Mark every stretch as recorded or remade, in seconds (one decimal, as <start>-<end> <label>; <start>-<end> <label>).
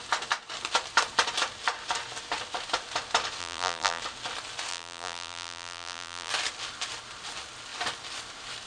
0.0-3.4 recorded; 3.4-4.0 remade; 4.0-4.7 recorded; 4.7-6.3 remade; 6.3-8.7 recorded